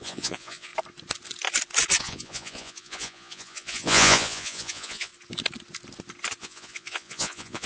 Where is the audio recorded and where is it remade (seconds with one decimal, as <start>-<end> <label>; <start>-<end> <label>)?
0.0-0.7 remade; 0.7-2.0 recorded; 2.0-5.1 remade; 5.1-6.4 recorded; 6.4-7.7 remade